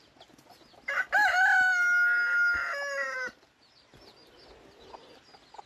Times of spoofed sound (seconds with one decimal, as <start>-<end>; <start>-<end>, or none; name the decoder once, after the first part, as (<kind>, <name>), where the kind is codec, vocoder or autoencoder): none